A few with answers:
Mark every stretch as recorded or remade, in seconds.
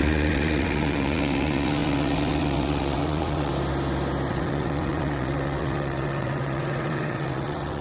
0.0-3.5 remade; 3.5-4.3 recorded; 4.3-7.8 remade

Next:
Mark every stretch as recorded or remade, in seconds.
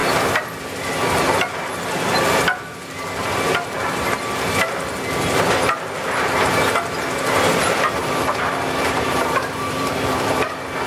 0.0-8.0 recorded; 8.0-10.5 remade; 10.5-10.9 recorded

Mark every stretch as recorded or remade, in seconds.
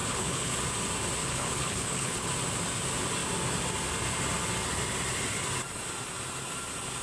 0.0-0.6 remade; 0.6-1.2 recorded; 1.2-2.3 remade; 2.3-7.0 recorded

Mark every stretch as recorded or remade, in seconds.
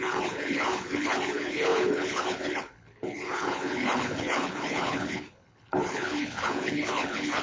0.0-7.4 remade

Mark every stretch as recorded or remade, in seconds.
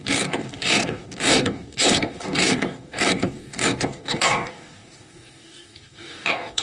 0.0-6.6 remade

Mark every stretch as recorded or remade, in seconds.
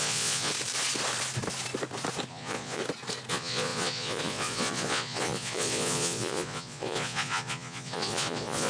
0.0-0.5 remade; 0.5-2.3 recorded; 2.3-2.8 remade; 2.8-3.3 recorded; 3.3-8.7 remade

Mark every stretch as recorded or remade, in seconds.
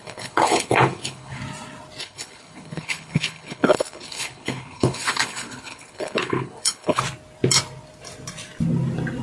0.0-1.4 remade; 1.4-2.0 recorded; 2.0-7.0 remade; 7.0-9.2 recorded